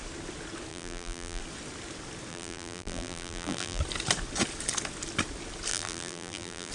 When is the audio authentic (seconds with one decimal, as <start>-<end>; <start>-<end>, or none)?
0.0-0.7; 1.4-2.3; 3.8-5.7